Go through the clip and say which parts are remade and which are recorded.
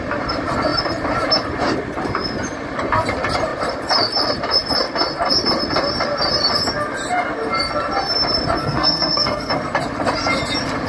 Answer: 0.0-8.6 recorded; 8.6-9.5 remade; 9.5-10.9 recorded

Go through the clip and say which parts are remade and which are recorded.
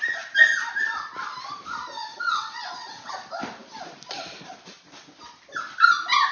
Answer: 0.0-2.1 recorded; 2.1-3.1 remade; 3.1-6.3 recorded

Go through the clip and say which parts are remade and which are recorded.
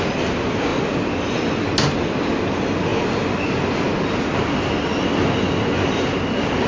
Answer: 0.0-6.7 recorded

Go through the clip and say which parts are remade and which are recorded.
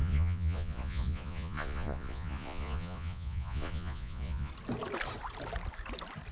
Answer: 0.0-4.5 remade; 4.5-6.3 recorded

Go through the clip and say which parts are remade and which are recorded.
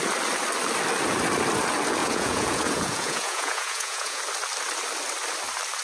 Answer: 0.0-2.0 recorded; 2.0-4.2 remade; 4.2-5.8 recorded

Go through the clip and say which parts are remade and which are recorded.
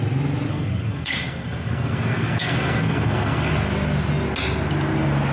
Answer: 0.0-0.5 recorded; 0.5-3.5 remade; 3.5-5.3 recorded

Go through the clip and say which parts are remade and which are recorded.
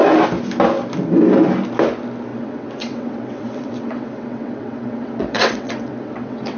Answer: 0.0-2.3 recorded; 2.3-6.6 remade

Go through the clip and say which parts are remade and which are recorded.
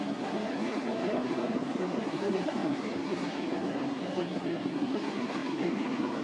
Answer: 0.0-6.2 remade